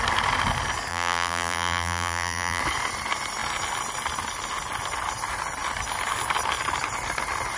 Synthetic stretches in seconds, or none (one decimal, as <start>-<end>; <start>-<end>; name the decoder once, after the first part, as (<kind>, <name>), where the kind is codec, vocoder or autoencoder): 0.9-2.6 (vocoder, BigVGAN v2)